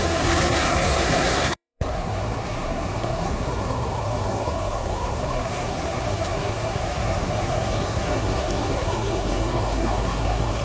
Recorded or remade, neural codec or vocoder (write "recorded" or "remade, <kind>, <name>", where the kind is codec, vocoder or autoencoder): remade, codec, SNAC